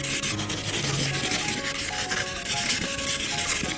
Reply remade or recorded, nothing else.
recorded